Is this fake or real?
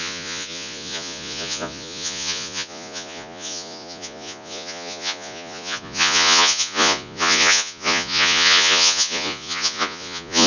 fake